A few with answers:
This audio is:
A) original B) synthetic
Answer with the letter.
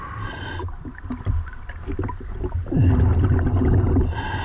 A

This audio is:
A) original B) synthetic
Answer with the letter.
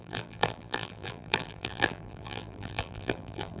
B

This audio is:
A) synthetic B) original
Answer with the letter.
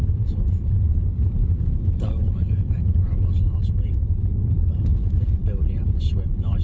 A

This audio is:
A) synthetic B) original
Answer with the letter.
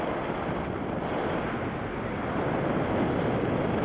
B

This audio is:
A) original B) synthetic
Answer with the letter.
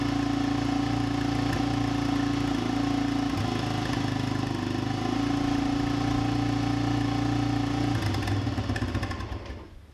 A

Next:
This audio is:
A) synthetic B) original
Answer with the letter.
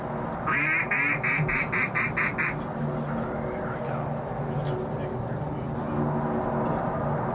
B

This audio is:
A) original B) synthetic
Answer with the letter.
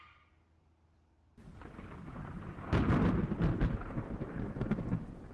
A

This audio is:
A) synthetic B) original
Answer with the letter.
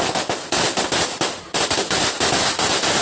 B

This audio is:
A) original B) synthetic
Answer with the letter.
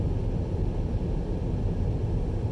A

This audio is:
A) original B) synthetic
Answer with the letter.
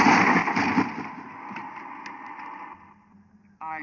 A